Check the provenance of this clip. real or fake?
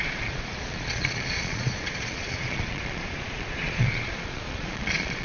fake